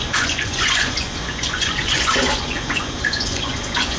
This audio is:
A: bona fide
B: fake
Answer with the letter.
B